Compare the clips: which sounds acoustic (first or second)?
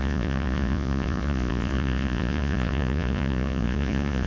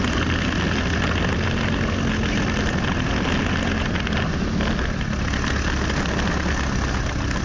second